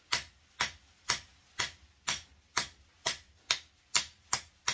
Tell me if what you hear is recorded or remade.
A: recorded